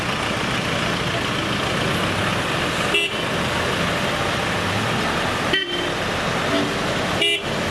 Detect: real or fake real